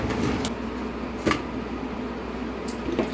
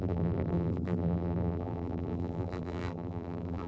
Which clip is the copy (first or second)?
second